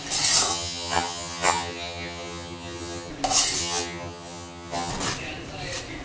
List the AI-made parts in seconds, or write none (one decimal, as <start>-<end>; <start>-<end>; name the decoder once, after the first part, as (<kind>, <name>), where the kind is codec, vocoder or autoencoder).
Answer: 0.5-3.1 (vocoder, HiFi-GAN); 3.6-4.9